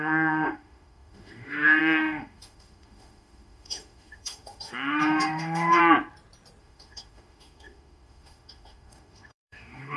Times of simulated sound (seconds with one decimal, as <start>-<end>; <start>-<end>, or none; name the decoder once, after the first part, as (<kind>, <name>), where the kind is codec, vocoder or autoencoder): 0.0-5.8 (autoencoder, DAC-VAE); 6.6-10.0